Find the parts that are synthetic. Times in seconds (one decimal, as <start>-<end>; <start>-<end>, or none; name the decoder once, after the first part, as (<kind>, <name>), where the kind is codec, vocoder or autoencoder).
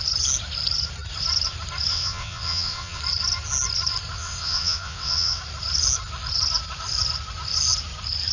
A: 1.9-3.0 (vocoder, WaveNeXt); 4.2-5.4